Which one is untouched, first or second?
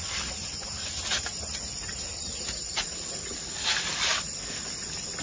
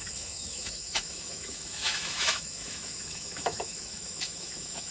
first